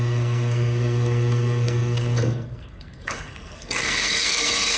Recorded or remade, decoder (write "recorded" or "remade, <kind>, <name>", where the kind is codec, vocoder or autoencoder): remade, codec, SNAC